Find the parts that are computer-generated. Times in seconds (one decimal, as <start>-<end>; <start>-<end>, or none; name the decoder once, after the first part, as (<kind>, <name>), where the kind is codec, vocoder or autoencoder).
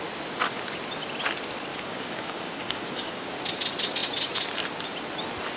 1.7-3.3 (codec, DAC)